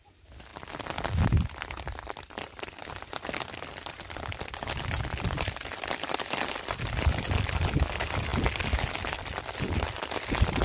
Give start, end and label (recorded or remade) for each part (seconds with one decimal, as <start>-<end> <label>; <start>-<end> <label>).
0.0-10.6 recorded